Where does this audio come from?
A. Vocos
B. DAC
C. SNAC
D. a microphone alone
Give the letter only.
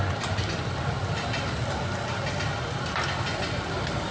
D